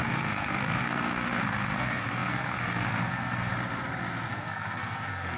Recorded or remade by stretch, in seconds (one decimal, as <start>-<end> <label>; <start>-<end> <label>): 0.0-3.5 remade; 3.5-4.3 recorded; 4.3-5.4 remade